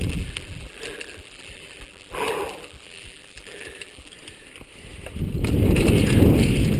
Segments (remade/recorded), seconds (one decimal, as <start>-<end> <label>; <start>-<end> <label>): 0.0-4.1 remade; 4.1-6.8 recorded